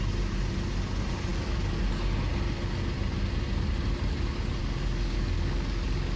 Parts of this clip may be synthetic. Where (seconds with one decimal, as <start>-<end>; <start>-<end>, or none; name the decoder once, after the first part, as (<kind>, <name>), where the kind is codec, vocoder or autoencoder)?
1.3-1.8 (codec, DAC); 4.6-6.2